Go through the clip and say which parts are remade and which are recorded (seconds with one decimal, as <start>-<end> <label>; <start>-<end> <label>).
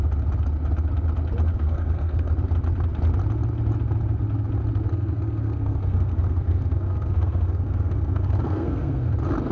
0.0-1.5 recorded; 1.5-2.3 remade; 2.3-4.9 recorded; 4.9-9.1 remade; 9.1-9.5 recorded